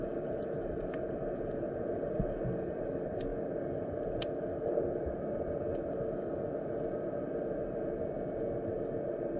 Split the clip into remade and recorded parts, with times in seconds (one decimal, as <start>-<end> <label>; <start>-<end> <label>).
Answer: 0.0-9.4 recorded